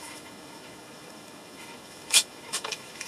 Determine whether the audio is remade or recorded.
remade